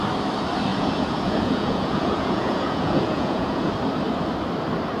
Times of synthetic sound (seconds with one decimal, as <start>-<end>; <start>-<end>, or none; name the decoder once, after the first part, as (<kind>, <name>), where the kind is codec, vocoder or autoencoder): 0.7-3.7 (vocoder, Vocos)